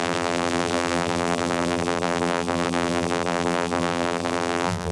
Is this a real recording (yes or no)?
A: no